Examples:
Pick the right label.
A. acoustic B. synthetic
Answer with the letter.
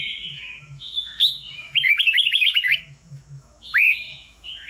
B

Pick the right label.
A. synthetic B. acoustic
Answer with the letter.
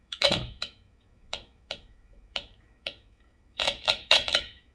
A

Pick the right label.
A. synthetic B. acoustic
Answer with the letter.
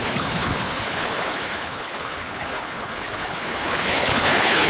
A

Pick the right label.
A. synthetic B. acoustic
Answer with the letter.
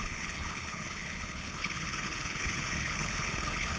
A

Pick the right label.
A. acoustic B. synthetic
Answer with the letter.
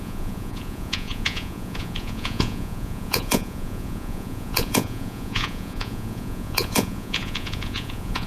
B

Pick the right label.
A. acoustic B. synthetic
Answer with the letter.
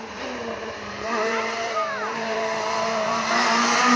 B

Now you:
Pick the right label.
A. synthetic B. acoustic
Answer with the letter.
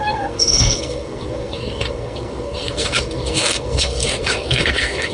A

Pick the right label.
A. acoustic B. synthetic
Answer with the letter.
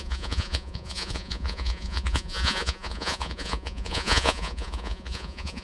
B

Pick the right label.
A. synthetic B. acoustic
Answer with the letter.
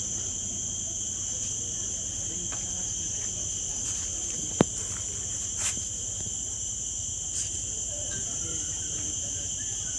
A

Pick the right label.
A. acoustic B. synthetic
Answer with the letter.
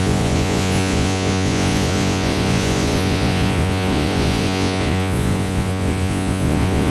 B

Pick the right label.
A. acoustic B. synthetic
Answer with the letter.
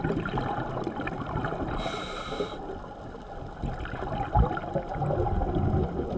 A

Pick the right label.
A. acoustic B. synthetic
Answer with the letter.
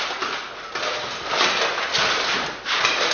A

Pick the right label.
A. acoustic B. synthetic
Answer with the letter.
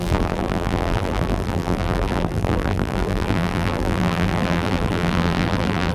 B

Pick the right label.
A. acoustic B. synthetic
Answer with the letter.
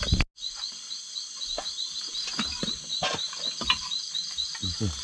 A